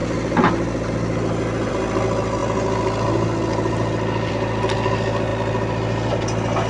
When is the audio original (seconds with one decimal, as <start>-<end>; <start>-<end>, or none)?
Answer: 0.0-6.7